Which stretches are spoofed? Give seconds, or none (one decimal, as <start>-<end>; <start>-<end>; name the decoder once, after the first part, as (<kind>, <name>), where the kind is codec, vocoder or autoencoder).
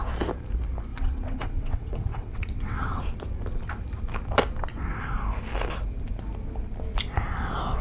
0.9-3.0 (vocoder, WaveNeXt)